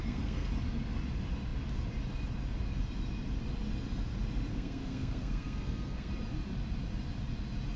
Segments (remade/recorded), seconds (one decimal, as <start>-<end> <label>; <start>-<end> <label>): 0.0-0.5 remade; 0.5-4.5 recorded; 4.5-6.1 remade; 6.1-7.8 recorded